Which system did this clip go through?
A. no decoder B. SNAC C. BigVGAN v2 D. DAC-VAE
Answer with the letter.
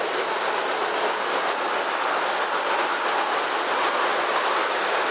A